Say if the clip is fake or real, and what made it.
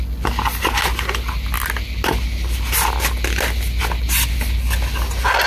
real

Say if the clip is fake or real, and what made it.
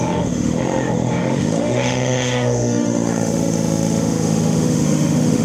fake, autoencoder, DAC-VAE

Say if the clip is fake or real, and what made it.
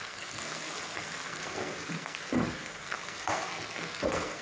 fake, codec, SNAC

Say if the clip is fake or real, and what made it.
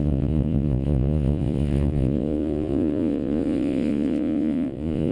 fake, vocoder, Vocos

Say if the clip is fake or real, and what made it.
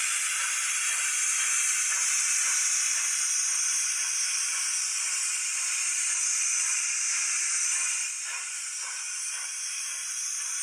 fake, vocoder, BigVGAN v2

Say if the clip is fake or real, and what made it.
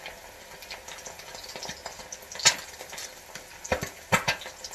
real